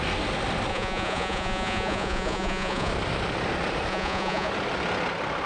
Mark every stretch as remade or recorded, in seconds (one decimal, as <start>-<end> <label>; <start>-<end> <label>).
0.0-0.7 recorded; 0.7-2.9 remade; 2.9-3.9 recorded; 3.9-4.5 remade; 4.5-5.5 recorded